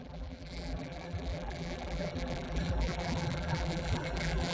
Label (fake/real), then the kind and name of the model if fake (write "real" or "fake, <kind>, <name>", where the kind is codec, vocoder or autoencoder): fake, vocoder, BigVGAN v2